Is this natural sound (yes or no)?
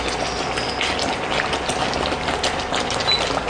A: yes